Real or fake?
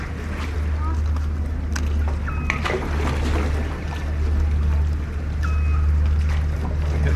real